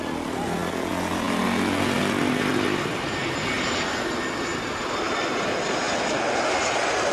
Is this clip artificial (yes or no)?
no